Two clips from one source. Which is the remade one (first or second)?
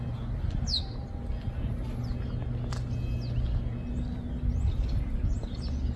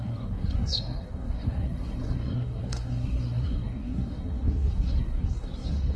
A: second